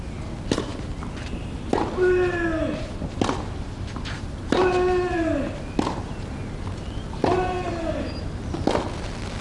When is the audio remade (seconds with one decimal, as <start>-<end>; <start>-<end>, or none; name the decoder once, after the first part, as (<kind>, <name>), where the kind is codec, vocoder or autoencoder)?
none